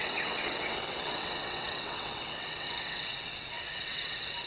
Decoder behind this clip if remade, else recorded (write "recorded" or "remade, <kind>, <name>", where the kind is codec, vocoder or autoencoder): remade, vocoder, WaveNeXt